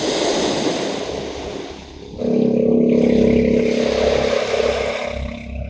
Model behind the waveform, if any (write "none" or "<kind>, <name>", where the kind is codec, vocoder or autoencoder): none